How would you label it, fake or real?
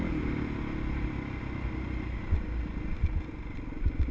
real